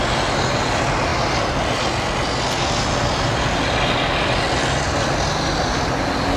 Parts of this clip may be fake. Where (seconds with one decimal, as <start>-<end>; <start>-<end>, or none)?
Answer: none